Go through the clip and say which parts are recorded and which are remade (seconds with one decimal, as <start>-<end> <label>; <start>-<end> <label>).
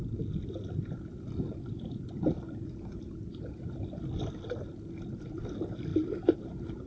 0.0-6.9 recorded